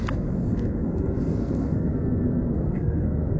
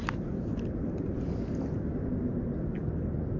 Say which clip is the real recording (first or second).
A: second